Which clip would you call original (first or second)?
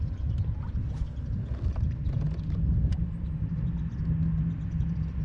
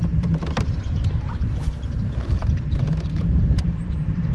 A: first